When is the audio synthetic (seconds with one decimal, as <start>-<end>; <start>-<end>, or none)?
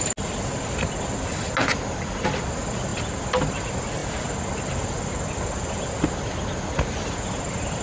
none